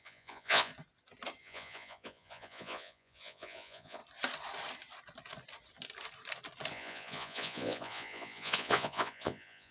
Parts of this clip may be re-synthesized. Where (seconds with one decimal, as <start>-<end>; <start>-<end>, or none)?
0.0-0.7; 1.4-4.0; 6.7-9.7